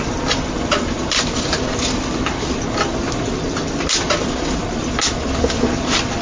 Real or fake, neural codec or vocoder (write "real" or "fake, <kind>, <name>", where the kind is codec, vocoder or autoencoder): real